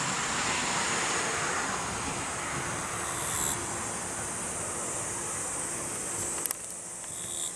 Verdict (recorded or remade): recorded